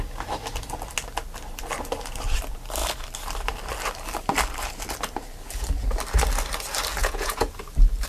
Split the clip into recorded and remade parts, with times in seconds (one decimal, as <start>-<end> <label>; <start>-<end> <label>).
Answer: 0.0-7.0 recorded; 7.0-7.5 remade; 7.5-8.1 recorded